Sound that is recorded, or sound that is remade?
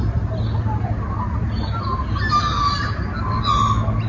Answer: recorded